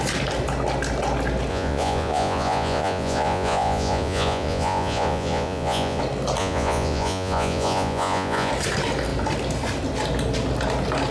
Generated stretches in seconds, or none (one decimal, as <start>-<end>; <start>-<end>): 1.5-6.0; 6.4-8.5